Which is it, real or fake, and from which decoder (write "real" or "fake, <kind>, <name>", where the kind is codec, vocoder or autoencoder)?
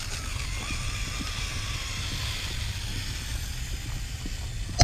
real